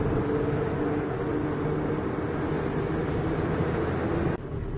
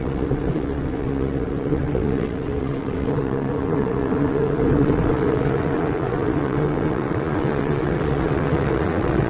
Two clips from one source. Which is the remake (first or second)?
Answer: second